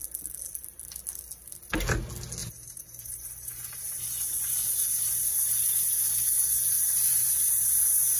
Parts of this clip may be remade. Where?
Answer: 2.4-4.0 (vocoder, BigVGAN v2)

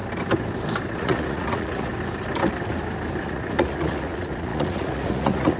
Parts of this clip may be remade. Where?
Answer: 0.9-1.9 (vocoder, Vocos); 3.2-5.6

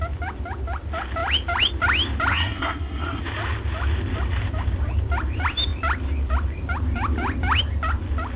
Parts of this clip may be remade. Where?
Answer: 2.3-3.2 (codec, SNAC)

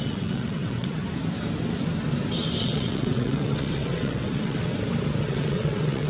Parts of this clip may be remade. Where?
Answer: 0.0-1.0 (vocoder, WaveNeXt); 2.6-4.7; 5.2-6.1

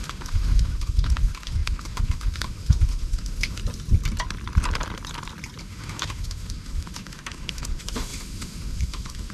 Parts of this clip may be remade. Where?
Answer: 0.0-3.6 (autoencoder, DAC-VAE); 5.6-9.3

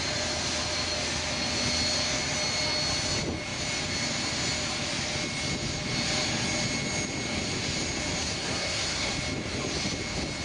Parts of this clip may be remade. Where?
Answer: 8.2-9.1 (codec, SNAC)